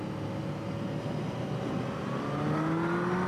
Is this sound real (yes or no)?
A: yes